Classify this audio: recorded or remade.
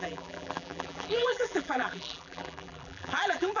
remade